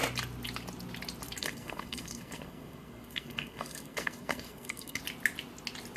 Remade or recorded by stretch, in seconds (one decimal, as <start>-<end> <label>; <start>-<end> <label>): 0.0-1.4 recorded; 1.4-5.0 remade; 5.0-6.0 recorded